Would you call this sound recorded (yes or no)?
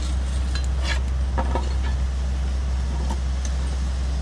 yes